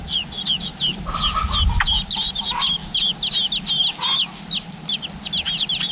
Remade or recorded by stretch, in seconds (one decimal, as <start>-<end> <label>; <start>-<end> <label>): 0.0-5.9 recorded